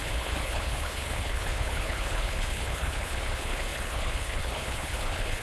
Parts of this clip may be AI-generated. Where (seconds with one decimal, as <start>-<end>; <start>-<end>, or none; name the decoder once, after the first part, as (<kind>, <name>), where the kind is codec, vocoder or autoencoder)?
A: 0.0-5.4 (codec, HILCodec)